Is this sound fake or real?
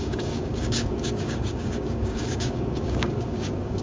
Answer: fake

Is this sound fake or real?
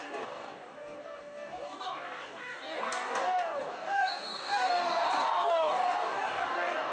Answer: fake